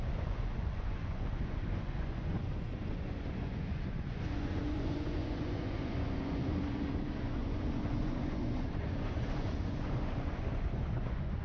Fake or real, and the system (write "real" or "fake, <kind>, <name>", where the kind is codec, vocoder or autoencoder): fake, vocoder, Vocos